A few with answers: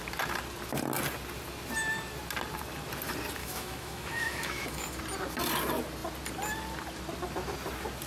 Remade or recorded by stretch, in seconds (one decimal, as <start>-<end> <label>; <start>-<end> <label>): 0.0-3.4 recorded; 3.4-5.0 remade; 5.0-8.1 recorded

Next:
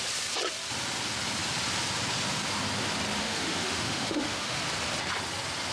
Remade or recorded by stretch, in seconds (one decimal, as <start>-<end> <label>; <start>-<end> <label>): 0.0-3.2 recorded; 3.2-4.6 remade; 4.6-5.7 recorded

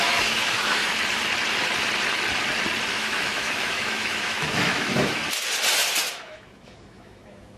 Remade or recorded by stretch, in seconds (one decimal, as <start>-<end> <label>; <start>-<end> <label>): 0.0-0.8 remade; 0.8-2.9 recorded; 2.9-5.2 remade; 5.2-6.1 recorded; 6.1-7.6 remade